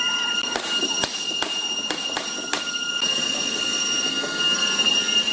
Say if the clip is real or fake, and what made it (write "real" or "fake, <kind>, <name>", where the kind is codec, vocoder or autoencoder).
real